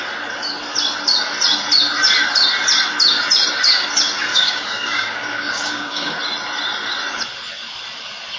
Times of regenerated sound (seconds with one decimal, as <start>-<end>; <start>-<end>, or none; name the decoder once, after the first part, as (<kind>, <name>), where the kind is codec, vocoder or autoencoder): 4.3-6.2 (codec, DAC)